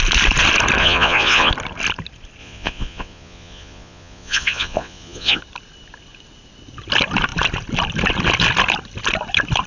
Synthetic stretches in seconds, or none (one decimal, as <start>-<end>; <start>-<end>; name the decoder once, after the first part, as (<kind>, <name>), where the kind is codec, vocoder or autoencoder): 0.8-1.5 (vocoder, Vocos); 2.4-5.4